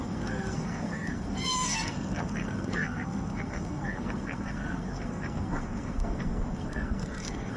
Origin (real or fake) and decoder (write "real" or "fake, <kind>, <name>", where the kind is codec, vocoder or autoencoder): fake, codec, SNAC